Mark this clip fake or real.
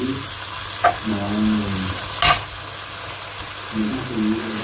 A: real